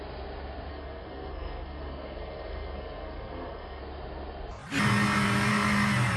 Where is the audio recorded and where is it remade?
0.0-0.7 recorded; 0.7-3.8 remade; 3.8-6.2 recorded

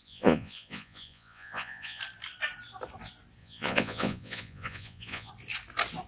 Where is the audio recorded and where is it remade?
0.0-2.0 remade; 2.0-3.4 recorded; 3.4-5.3 remade; 5.3-6.1 recorded

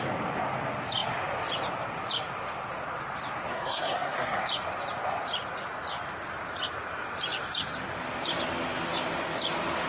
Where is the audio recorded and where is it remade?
0.0-3.5 recorded; 3.5-4.4 remade; 4.4-9.9 recorded

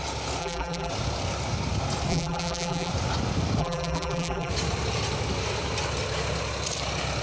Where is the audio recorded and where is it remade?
0.0-0.4 recorded; 0.4-0.9 remade; 0.9-2.1 recorded; 2.1-2.9 remade; 2.9-3.6 recorded; 3.6-4.5 remade; 4.5-7.2 recorded

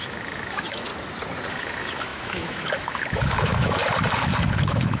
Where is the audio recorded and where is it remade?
0.0-0.9 remade; 0.9-1.5 recorded; 1.5-3.8 remade; 3.8-4.6 recorded; 4.6-5.0 remade

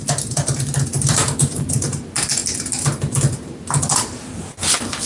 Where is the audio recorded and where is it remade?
0.0-0.9 recorded; 0.9-2.0 remade; 2.0-5.1 recorded

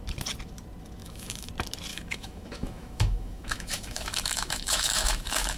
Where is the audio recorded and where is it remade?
0.0-1.0 recorded; 1.0-1.5 remade; 1.5-1.9 recorded; 1.9-5.6 remade